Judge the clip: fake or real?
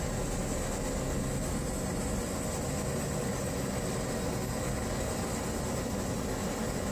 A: real